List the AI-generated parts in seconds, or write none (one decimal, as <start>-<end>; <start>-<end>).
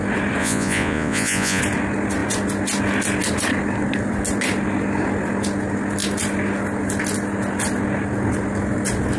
0.4-1.6